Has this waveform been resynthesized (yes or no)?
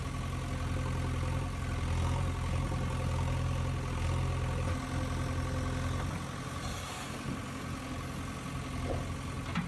no